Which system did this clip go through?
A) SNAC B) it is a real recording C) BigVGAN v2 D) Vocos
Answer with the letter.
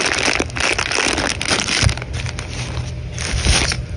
B